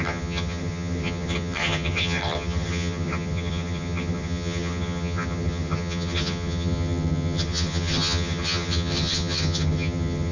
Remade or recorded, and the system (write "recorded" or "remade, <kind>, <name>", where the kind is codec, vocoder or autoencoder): remade, vocoder, HiFi-GAN